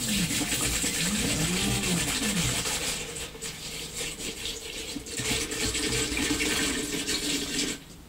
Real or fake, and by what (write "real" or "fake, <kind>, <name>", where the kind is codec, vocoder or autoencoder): real